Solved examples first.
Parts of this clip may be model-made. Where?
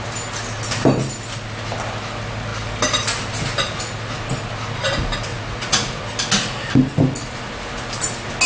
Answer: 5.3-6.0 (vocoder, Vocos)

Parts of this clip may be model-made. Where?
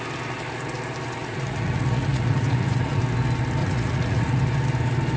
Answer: 1.2-3.0 (vocoder, Vocos); 3.6-4.4